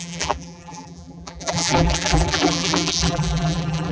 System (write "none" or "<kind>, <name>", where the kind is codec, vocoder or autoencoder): vocoder, BigVGAN v2